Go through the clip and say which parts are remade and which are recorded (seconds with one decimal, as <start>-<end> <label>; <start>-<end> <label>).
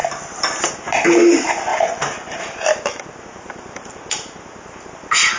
0.0-5.4 recorded